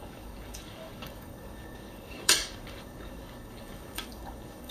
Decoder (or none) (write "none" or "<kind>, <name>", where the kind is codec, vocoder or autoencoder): codec, DAC